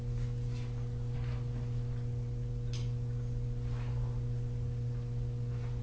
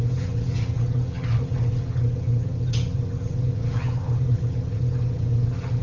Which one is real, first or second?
first